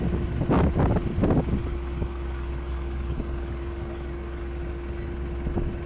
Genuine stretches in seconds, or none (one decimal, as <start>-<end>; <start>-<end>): 0.0-1.6; 4.4-5.9